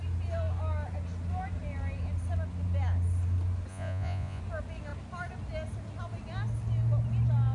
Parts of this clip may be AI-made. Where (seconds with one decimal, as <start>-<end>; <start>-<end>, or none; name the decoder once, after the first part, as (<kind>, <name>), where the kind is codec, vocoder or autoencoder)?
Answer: 3.7-4.4 (vocoder, Vocos)

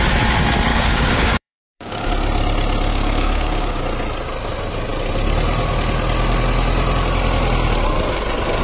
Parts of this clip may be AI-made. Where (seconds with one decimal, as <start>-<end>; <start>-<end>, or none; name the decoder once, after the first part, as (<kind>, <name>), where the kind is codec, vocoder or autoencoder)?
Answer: 0.7-2.1 (codec, DAC); 2.9-3.8

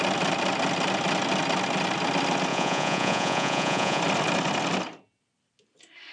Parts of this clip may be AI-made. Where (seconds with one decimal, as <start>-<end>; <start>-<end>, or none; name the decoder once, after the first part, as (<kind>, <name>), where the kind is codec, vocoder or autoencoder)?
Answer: 2.5-4.0 (vocoder, Vocos)

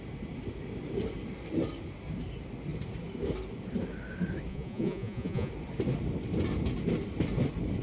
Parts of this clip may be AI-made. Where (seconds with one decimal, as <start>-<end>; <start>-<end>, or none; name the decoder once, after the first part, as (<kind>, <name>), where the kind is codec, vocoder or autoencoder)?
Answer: 4.5-5.5 (vocoder, Vocos)

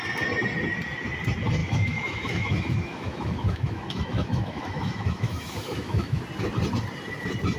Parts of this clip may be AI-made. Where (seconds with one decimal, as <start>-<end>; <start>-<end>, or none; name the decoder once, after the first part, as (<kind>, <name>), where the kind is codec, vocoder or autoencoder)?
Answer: 1.6-6.2 (autoencoder, DAC-VAE)

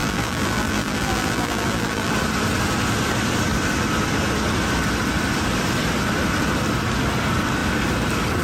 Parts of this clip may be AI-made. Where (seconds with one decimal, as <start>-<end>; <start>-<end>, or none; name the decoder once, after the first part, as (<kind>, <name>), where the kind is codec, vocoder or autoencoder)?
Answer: 0.0-2.1 (vocoder, BigVGAN v2)

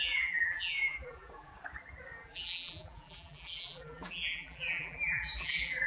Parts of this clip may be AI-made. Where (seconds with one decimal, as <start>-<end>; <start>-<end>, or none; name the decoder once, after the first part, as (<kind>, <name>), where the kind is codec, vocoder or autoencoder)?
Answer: 0.0-1.5 (vocoder, BigVGAN v2); 2.3-5.9